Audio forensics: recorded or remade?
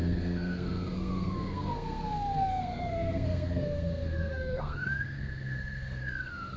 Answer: remade